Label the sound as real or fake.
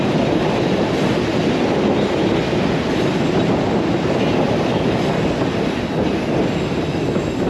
real